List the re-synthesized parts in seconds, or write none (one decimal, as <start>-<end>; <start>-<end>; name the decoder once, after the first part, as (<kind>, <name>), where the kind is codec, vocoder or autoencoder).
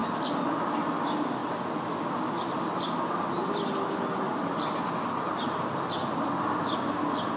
none